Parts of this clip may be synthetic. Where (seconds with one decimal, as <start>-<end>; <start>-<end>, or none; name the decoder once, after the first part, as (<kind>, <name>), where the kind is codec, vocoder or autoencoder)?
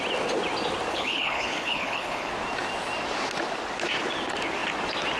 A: 0.9-2.3 (codec, HILCodec)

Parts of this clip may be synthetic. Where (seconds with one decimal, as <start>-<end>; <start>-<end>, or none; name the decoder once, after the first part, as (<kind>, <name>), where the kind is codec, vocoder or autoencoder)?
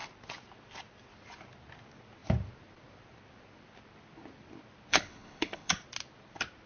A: 4.9-5.7 (codec, HILCodec)